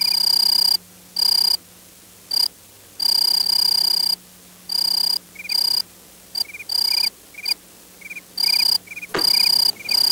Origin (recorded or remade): recorded